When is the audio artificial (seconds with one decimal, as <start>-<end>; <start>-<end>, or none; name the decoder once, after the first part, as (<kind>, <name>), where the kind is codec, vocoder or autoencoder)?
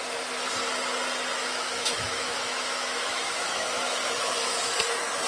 1.4-4.6 (autoencoder, DAC-VAE)